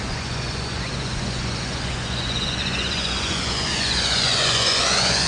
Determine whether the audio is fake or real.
fake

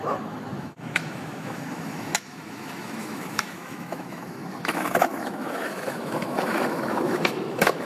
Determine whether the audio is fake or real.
fake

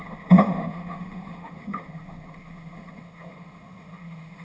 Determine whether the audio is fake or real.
fake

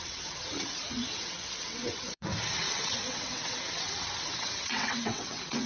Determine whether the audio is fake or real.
fake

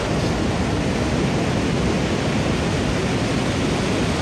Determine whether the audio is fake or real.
real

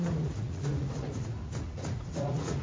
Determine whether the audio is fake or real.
fake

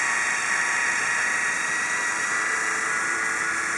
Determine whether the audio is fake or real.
fake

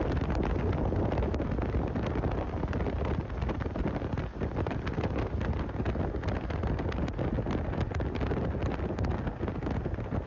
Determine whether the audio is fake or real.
real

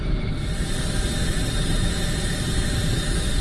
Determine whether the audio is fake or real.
real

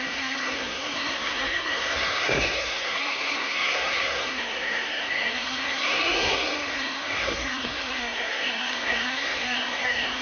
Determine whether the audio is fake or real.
fake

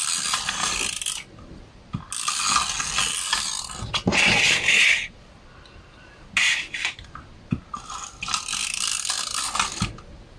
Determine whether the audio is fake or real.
real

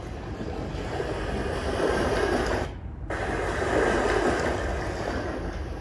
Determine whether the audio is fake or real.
real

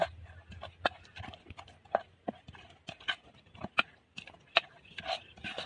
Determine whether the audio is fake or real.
real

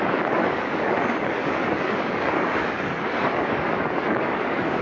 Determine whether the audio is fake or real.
fake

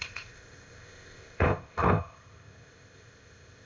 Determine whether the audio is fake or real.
fake